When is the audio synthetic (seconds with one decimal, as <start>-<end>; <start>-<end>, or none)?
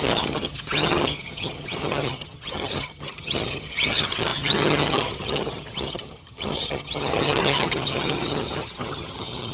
0.0-9.5